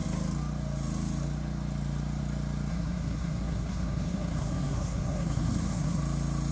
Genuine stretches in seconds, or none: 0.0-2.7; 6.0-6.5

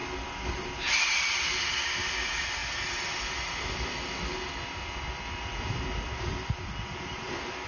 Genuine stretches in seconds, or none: 0.0-7.7